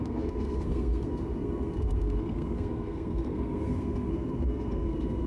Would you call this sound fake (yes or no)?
yes